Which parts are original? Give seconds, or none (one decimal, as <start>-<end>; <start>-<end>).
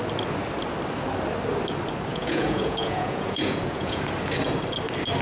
0.0-2.1; 4.0-5.2